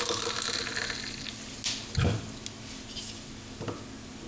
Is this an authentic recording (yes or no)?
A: yes